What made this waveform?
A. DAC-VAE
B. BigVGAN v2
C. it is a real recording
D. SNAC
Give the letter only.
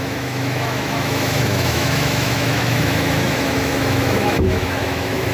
A